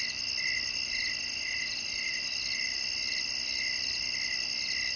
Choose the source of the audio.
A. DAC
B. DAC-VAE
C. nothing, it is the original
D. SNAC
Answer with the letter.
C